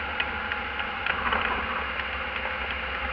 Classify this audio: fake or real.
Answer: real